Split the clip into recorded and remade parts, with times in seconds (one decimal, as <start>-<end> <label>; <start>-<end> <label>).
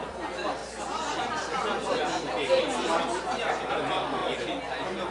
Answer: 0.0-5.1 recorded